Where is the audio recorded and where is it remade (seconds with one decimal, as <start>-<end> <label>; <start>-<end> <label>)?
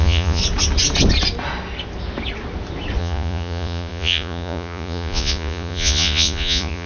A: 0.0-0.4 remade; 0.4-3.0 recorded; 3.0-6.9 remade